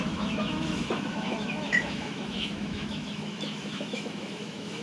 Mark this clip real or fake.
fake